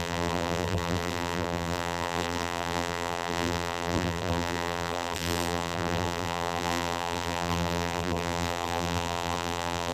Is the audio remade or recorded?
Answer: remade